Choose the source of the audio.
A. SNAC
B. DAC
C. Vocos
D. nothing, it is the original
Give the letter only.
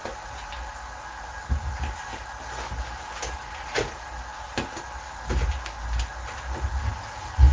D